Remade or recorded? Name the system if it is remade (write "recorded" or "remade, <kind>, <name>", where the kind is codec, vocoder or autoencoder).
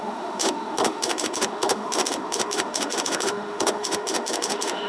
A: remade, autoencoder, DAC-VAE